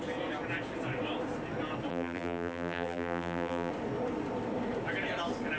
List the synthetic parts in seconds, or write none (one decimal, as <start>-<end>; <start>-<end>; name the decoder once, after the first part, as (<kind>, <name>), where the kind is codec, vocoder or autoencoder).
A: 1.9-3.7 (vocoder, BigVGAN v2)